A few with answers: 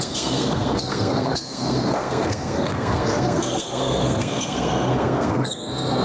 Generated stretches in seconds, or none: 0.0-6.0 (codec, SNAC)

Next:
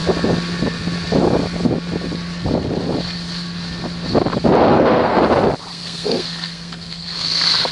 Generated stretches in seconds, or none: 4.7-5.2 (codec, SNAC); 5.7-7.7